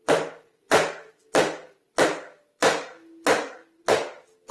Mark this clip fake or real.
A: real